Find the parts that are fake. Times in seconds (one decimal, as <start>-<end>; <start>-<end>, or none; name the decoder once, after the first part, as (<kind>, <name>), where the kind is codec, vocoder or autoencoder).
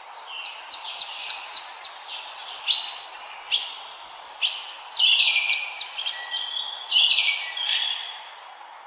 1.2-1.8 (vocoder, Vocos)